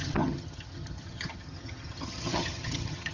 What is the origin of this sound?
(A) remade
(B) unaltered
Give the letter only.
A